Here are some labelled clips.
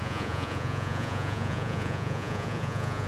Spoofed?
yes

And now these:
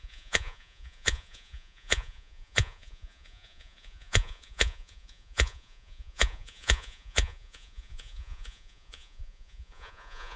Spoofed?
yes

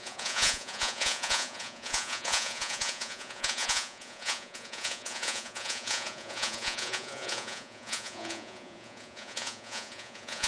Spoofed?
yes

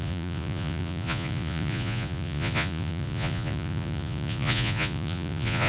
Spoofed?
yes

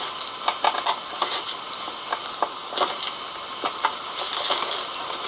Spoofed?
no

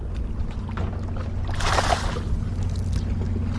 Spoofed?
no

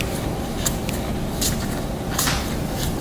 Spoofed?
no